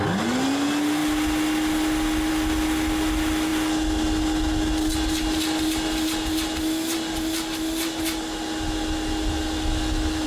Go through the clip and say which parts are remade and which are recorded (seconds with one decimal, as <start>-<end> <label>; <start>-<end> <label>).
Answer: 0.0-10.3 recorded